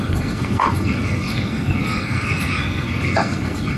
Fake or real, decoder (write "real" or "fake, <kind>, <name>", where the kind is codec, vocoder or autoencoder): fake, codec, SNAC